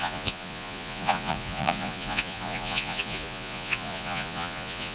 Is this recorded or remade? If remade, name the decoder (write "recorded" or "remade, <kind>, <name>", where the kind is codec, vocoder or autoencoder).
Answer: remade, vocoder, Vocos